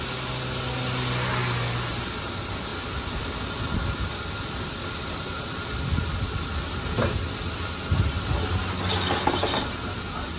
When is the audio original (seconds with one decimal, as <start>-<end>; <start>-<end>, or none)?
0.0-10.4